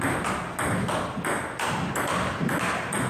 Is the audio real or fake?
real